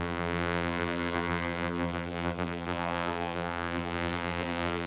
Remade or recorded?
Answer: remade